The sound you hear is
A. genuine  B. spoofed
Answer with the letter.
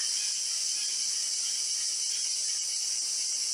A